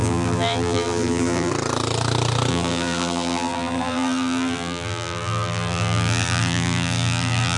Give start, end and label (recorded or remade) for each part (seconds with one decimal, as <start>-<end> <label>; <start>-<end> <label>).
0.0-1.5 remade; 1.5-2.5 recorded; 2.5-7.6 remade